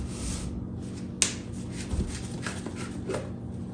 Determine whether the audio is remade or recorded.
recorded